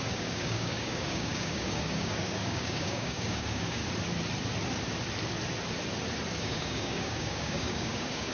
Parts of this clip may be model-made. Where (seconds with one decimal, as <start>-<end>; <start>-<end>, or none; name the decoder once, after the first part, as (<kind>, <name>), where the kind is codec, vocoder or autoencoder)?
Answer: 0.0-3.8 (codec, DAC); 6.4-8.3